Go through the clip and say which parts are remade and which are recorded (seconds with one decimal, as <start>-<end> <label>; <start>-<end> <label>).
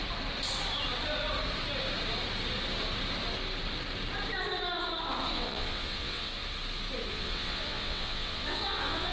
0.0-5.3 recorded; 5.3-6.3 remade; 6.3-7.1 recorded; 7.1-9.1 remade